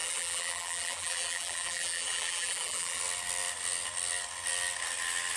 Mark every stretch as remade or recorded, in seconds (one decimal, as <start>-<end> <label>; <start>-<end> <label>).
0.0-3.0 remade; 3.0-5.4 recorded